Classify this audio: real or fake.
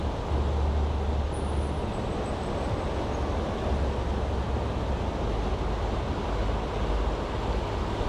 real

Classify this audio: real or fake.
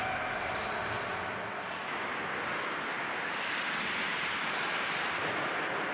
real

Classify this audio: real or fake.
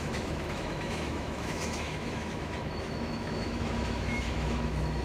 fake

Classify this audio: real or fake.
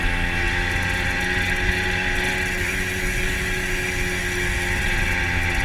real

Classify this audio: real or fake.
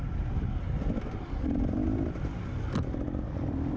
real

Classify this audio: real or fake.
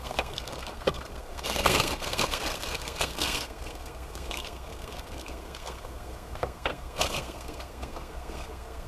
fake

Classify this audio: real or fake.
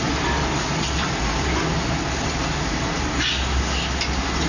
real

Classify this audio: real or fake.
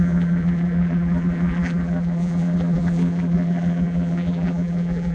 fake